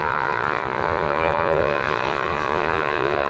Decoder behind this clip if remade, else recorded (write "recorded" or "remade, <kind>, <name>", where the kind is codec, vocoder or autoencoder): remade, vocoder, Vocos